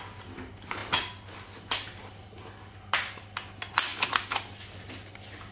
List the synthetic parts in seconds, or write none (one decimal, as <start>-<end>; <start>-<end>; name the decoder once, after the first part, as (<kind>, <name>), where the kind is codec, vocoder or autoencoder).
none